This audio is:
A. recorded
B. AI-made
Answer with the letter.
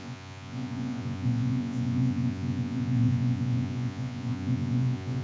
B